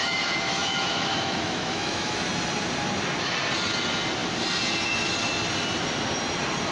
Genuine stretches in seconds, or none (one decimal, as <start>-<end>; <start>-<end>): 2.3-6.7